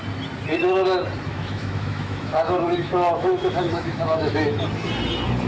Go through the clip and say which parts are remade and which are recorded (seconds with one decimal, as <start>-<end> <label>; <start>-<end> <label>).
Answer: 0.0-1.3 recorded; 1.3-4.6 remade; 4.6-5.5 recorded